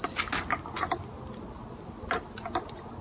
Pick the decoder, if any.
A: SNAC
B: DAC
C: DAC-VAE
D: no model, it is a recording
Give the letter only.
D